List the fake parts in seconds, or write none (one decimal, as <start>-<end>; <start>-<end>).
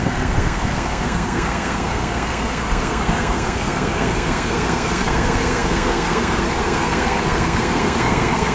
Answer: 0.0-8.5